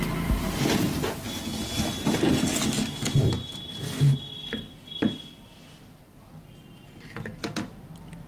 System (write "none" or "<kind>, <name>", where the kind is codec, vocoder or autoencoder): none